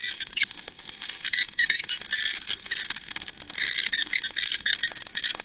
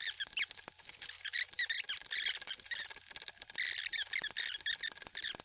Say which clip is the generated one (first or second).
first